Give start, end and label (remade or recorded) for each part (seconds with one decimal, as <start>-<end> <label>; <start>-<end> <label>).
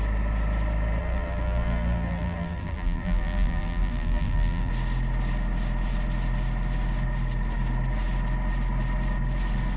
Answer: 0.0-1.0 recorded; 1.0-4.7 remade; 4.7-9.8 recorded